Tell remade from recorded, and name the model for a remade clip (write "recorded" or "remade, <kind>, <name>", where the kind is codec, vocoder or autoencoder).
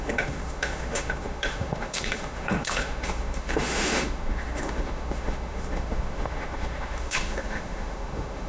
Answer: remade, autoencoder, DAC-VAE